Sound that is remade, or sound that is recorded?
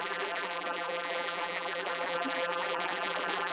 remade